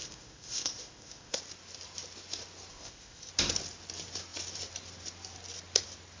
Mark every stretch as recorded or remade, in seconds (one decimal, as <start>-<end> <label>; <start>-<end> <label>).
0.0-1.4 remade; 1.4-2.7 recorded; 2.7-3.3 remade; 3.3-6.2 recorded